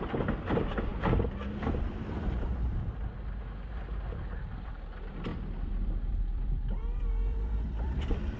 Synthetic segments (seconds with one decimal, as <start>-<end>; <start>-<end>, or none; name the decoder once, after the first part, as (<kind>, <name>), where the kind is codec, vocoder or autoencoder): 0.0-0.9 (vocoder, BigVGAN v2); 1.5-2.5; 3.7-8.4